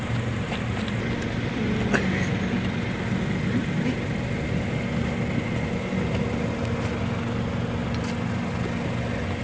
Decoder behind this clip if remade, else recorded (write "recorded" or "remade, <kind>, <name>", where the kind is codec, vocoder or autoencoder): recorded